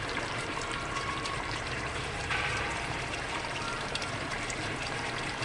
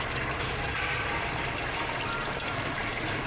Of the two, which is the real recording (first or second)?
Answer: second